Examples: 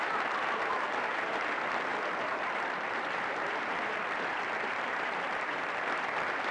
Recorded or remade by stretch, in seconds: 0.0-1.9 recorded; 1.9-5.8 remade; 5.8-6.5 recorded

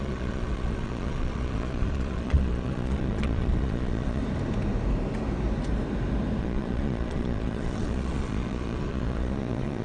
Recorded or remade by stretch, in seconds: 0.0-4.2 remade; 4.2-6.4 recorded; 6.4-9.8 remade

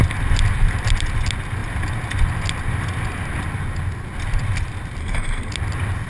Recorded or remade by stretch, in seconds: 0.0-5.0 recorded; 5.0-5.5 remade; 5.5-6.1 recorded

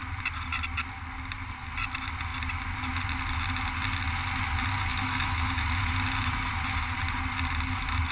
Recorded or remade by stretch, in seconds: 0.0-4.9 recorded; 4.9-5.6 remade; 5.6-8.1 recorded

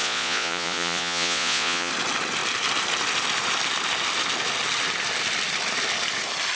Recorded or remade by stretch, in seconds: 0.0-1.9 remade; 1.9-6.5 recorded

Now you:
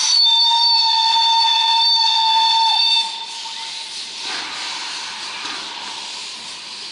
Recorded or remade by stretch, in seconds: 0.0-6.9 recorded

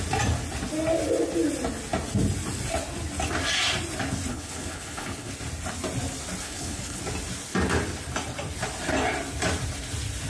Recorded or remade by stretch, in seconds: 0.0-4.3 recorded; 4.3-5.3 remade; 5.3-6.4 recorded; 6.4-7.0 remade; 7.0-10.3 recorded